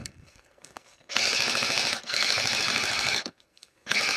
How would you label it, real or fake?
fake